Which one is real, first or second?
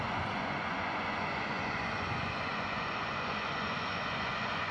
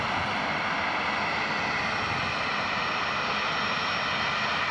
second